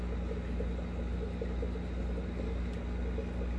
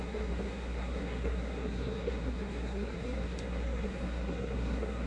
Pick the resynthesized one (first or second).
second